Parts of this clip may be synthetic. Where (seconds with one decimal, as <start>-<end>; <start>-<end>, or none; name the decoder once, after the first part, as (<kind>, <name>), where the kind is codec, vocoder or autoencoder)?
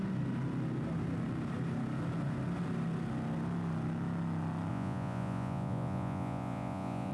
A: 4.7-7.1 (vocoder, Vocos)